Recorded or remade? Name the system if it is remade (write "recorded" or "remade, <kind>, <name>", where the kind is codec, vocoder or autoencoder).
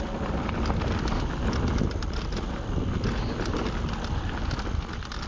recorded